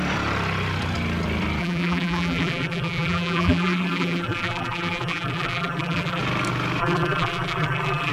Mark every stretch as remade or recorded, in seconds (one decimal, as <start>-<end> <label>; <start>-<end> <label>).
0.0-1.6 recorded; 1.6-6.2 remade; 6.2-6.8 recorded; 6.8-8.1 remade